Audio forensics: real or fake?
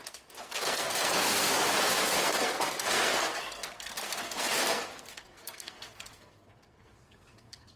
fake